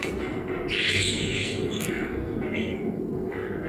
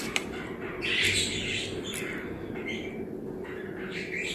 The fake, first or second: first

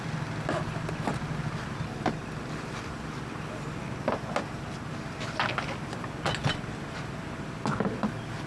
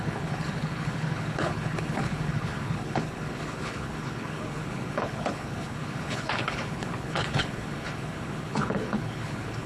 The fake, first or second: second